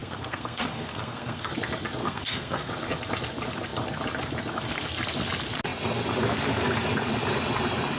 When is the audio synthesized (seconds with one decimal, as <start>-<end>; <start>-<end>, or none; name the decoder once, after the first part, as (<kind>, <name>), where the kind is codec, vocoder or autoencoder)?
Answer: 0.0-1.5 (codec, SNAC); 2.0-2.7